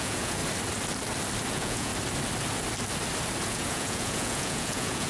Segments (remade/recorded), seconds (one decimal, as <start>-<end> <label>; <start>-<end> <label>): 0.0-0.4 remade; 0.4-1.5 recorded; 1.5-1.9 remade; 1.9-3.4 recorded; 3.4-5.1 remade